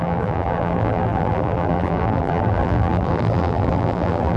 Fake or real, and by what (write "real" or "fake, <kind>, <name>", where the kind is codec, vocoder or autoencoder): fake, vocoder, BigVGAN v2